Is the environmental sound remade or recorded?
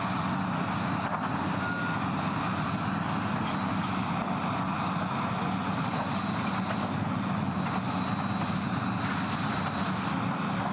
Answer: recorded